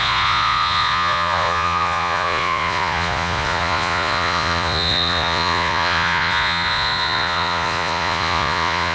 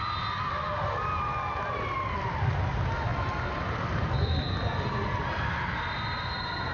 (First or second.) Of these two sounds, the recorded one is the second